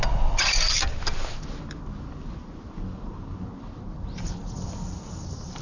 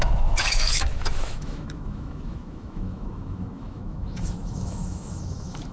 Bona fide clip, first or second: first